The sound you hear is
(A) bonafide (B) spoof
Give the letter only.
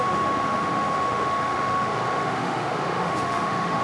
B